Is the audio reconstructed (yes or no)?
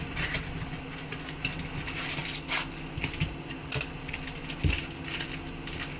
no